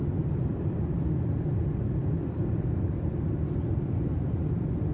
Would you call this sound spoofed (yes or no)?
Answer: yes